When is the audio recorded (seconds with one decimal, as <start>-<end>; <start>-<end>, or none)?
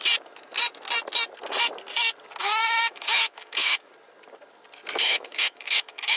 0.0-2.4; 3.9-5.0